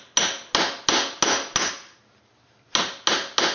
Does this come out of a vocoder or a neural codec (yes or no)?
no